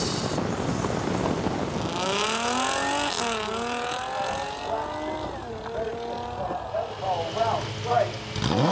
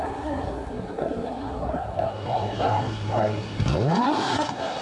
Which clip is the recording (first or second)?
first